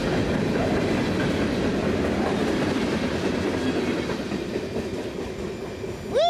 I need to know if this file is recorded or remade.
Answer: recorded